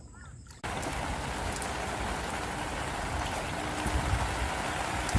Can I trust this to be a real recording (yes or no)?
yes